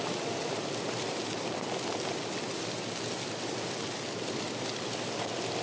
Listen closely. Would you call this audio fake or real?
real